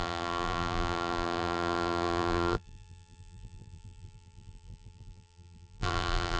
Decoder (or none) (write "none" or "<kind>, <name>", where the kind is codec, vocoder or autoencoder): vocoder, BigVGAN v2